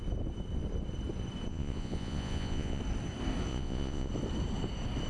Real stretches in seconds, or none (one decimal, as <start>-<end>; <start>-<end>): 0.0-1.5; 2.8-3.5; 4.1-5.1